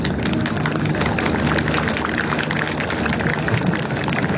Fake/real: real